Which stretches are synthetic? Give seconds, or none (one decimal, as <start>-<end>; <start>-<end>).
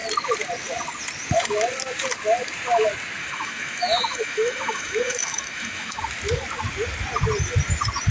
3.2-6.0